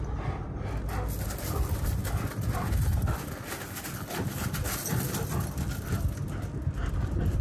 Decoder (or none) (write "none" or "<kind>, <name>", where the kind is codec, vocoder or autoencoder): none